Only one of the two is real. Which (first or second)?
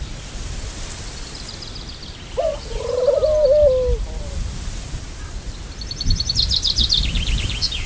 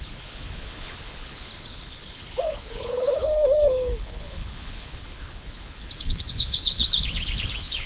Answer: first